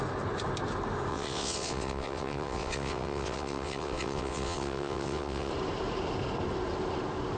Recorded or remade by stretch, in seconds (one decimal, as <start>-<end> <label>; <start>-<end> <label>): 0.0-1.1 recorded; 1.1-5.5 remade; 5.5-7.4 recorded